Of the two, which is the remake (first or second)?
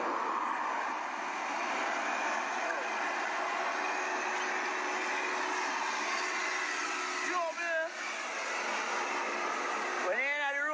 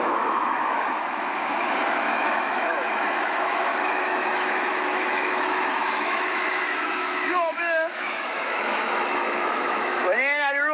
second